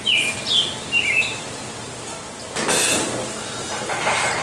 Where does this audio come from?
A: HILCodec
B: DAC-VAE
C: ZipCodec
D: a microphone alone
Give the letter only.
D